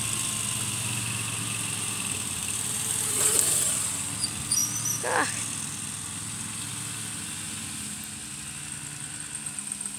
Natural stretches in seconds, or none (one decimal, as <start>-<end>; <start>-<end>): 0.0-2.4; 2.9-10.0